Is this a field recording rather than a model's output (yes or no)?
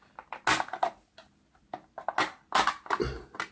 yes